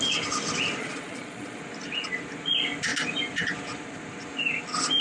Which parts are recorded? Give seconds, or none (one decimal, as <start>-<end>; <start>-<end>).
0.0-0.8; 1.6-5.0